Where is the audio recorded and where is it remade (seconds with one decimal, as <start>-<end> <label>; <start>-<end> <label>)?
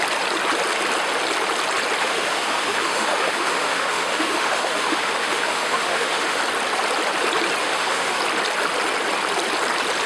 0.0-2.0 recorded; 2.0-6.4 remade; 6.4-7.6 recorded; 7.6-8.2 remade; 8.2-10.1 recorded